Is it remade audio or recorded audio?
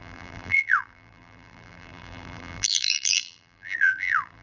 remade